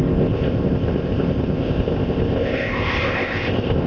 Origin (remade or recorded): remade